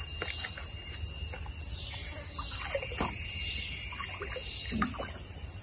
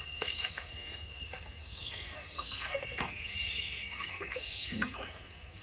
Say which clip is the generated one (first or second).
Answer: second